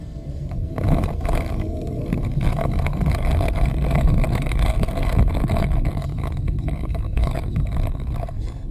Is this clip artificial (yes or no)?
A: yes